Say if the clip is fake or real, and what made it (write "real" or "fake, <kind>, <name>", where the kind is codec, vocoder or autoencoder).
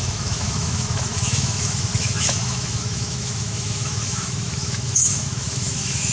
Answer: fake, autoencoder, DAC-VAE